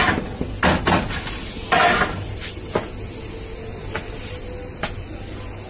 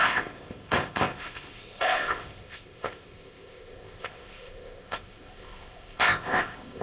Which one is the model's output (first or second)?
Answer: second